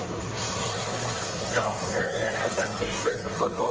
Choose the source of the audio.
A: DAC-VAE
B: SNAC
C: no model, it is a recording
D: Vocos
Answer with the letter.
B